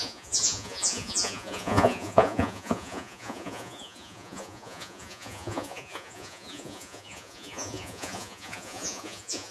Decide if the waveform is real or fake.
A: fake